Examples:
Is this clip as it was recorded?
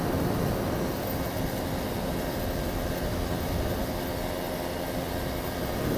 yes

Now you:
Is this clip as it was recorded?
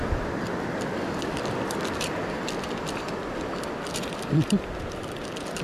yes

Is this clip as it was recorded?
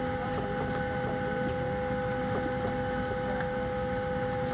yes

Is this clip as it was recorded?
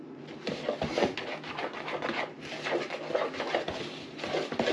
yes